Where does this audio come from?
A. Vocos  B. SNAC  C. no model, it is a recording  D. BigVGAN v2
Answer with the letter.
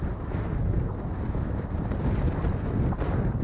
C